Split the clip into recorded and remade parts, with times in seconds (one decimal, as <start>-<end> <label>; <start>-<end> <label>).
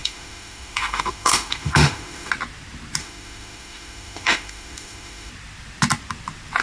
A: 0.0-2.3 remade; 2.3-3.0 recorded; 3.0-5.3 remade; 5.3-6.6 recorded